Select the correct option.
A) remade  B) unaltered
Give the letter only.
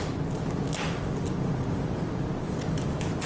B